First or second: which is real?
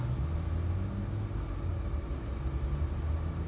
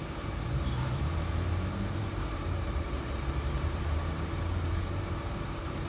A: first